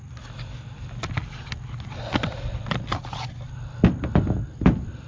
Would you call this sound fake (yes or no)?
no